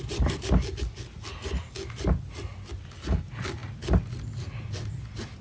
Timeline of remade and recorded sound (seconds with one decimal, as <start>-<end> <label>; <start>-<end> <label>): 0.0-5.4 recorded